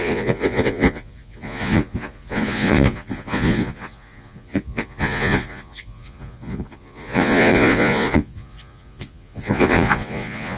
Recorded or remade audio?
remade